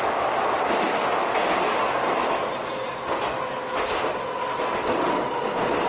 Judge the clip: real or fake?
real